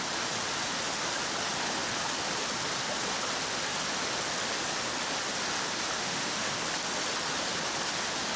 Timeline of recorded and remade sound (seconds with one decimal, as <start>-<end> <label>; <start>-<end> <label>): 0.0-6.0 recorded; 6.0-6.5 remade; 6.5-8.4 recorded